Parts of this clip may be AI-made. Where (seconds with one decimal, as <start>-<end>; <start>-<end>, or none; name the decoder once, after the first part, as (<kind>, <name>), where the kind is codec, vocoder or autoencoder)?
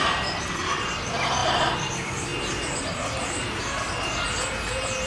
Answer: 0.0-2.3 (vocoder, BigVGAN v2); 4.5-5.1